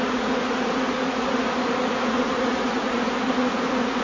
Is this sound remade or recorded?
remade